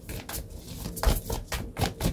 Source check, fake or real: real